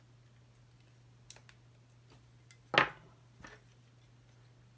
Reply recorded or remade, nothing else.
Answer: recorded